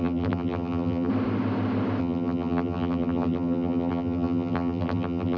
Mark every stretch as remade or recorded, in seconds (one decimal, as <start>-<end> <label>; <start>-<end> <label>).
0.0-1.1 remade; 1.1-2.0 recorded; 2.0-5.4 remade